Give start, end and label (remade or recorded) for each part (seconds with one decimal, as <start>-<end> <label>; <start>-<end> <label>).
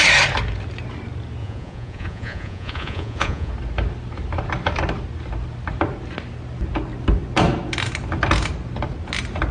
0.0-1.4 recorded; 1.4-3.5 remade; 3.5-9.5 recorded